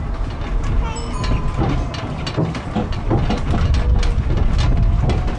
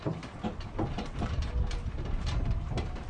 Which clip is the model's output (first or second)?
second